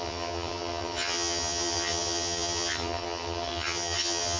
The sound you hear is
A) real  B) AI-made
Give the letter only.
B